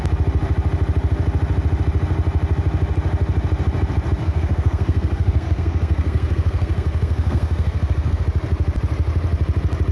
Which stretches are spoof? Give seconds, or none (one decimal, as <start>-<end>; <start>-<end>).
4.2-8.2